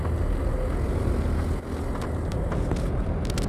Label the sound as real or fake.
real